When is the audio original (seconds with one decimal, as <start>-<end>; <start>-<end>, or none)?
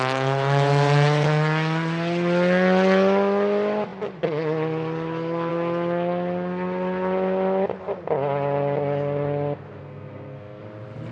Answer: 0.0-9.8; 10.6-11.1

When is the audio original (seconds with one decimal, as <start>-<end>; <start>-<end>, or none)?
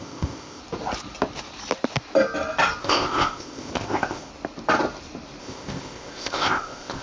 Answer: 0.6-2.8; 4.3-5.4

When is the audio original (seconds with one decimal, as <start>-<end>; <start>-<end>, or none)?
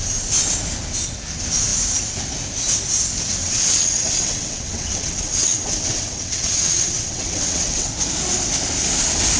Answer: 0.0-3.4; 7.9-9.4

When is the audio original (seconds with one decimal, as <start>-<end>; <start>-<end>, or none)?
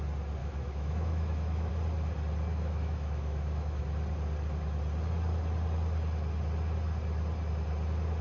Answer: 0.0-0.4; 1.7-2.5; 3.8-8.2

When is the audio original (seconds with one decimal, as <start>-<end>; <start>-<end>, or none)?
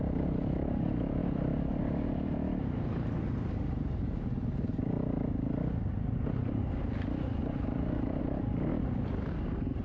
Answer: 0.0-7.4; 8.2-9.8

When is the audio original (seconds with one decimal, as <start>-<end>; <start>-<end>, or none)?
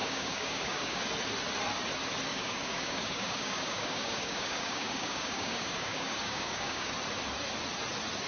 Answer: 1.0-2.3; 6.9-8.3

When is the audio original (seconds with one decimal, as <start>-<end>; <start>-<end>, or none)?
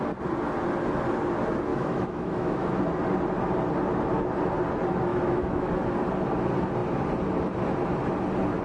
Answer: 0.0-1.7; 2.8-5.1; 5.7-8.6